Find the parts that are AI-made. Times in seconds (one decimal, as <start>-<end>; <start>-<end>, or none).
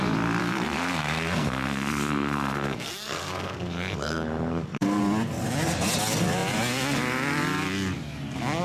0.4-5.0